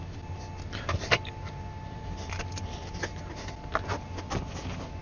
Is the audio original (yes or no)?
yes